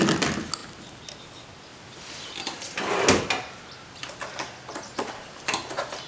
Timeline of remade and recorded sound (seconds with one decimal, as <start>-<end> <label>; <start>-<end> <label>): 0.0-6.1 recorded